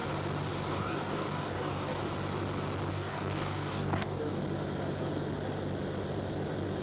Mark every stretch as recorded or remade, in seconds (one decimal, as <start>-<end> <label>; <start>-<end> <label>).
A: 0.0-0.7 recorded; 0.7-2.0 remade; 2.0-2.9 recorded; 2.9-4.4 remade; 4.4-6.8 recorded